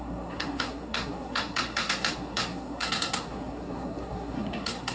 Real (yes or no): no